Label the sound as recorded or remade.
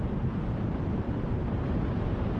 remade